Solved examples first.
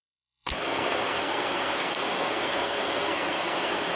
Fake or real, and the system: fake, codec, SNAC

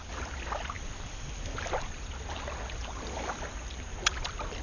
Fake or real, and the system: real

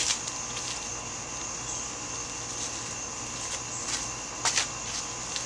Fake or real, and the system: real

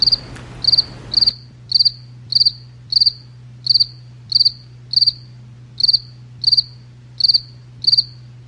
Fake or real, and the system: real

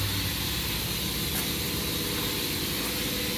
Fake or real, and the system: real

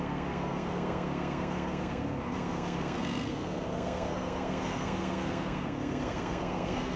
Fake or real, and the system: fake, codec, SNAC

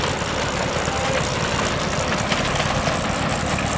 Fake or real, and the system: real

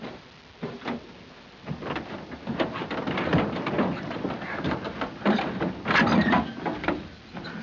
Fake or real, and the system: real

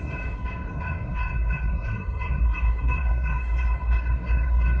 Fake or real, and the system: fake, codec, SNAC